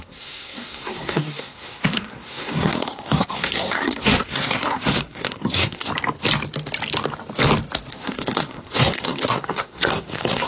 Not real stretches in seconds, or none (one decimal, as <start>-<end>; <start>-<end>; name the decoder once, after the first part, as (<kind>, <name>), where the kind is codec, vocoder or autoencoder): 0.0-5.9 (codec, SNAC); 7.9-10.5